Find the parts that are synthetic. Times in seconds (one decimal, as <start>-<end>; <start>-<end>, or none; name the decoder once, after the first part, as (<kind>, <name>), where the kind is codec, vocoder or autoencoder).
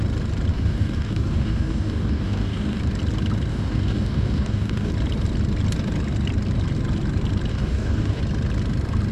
0.5-2.8 (codec, DAC); 3.5-4.9; 7.5-8.2